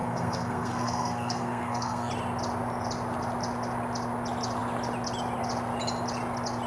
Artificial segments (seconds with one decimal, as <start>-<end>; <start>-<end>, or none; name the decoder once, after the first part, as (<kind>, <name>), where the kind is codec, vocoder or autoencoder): 0.0-2.1 (codec, SNAC)